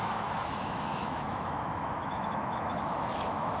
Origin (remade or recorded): remade